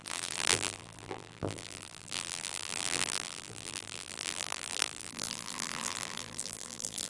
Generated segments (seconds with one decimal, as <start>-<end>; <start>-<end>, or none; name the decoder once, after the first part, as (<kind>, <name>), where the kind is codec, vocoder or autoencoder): 0.0-7.1 (vocoder, BigVGAN v2)